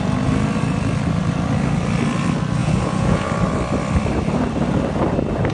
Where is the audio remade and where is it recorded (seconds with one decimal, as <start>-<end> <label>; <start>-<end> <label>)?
0.0-2.6 recorded; 2.6-3.3 remade; 3.3-5.5 recorded